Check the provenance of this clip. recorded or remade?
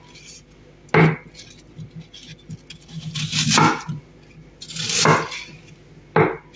recorded